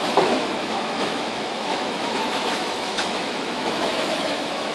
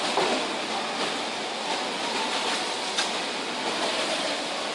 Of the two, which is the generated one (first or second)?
first